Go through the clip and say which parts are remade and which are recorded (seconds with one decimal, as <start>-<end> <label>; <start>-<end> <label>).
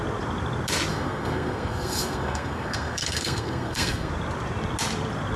0.0-0.9 recorded; 0.9-4.1 remade; 4.1-5.4 recorded